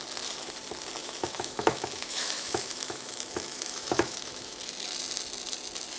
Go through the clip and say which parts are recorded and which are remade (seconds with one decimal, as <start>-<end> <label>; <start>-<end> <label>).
0.0-1.0 recorded; 1.0-4.6 remade; 4.6-6.0 recorded